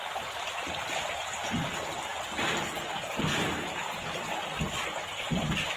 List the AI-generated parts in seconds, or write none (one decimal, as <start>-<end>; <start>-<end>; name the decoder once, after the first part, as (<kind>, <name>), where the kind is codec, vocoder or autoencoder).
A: 0.0-1.4 (vocoder, BigVGAN v2)